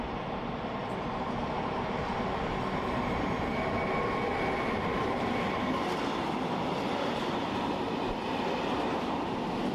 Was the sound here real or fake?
real